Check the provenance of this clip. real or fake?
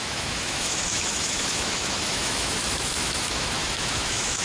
fake